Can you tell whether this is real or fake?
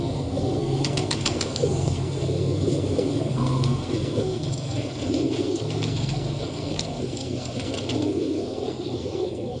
fake